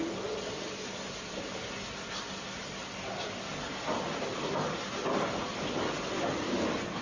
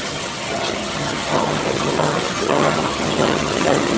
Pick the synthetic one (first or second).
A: second